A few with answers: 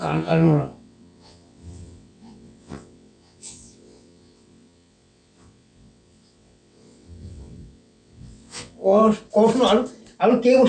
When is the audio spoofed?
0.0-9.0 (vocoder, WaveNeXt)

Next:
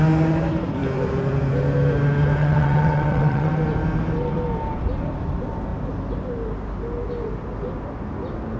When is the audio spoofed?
2.4-3.5 (vocoder, WaveNeXt)

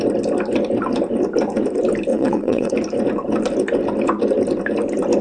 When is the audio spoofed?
2.1-2.7 (vocoder, WaveNeXt)